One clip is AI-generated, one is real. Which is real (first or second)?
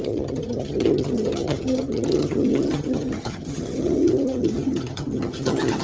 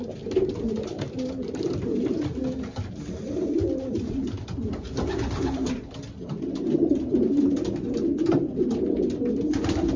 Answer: second